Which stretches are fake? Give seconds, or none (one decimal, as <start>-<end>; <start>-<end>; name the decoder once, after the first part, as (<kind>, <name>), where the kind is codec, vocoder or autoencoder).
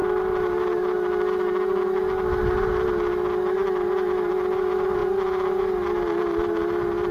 none